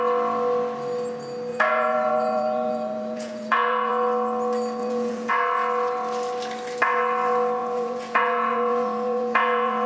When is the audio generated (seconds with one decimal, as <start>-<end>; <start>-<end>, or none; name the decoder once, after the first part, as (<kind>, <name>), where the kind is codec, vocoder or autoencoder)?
1.5-3.9 (vocoder, Vocos); 4.8-5.3; 7.6-9.9